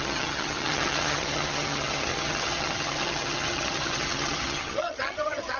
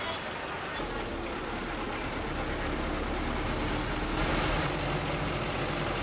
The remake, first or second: first